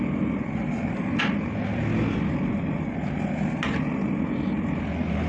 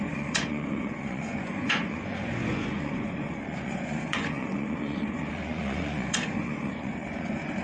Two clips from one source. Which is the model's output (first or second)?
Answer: second